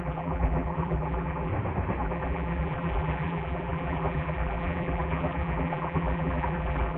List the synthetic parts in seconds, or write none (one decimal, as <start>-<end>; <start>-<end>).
0.0-1.5; 2.0-7.0